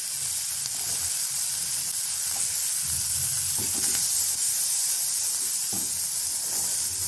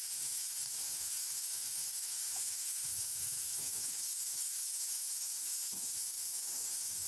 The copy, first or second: second